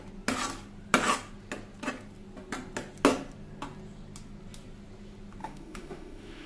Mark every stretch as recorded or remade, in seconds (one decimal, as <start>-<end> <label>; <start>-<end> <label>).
0.0-5.4 recorded; 5.4-6.5 remade